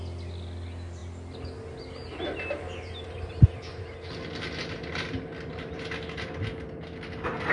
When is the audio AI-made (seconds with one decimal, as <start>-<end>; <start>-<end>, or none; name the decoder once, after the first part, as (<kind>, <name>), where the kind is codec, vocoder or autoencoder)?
none